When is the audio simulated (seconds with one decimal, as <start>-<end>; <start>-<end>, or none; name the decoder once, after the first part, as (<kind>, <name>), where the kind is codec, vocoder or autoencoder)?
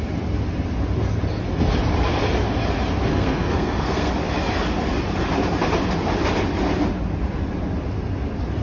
3.1-4.1 (codec, SNAC)